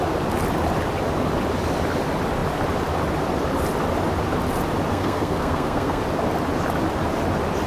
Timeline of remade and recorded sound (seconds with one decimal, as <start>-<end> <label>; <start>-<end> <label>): 0.0-4.9 recorded; 4.9-6.0 remade; 6.0-7.7 recorded